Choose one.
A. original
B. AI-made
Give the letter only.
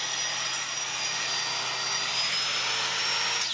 A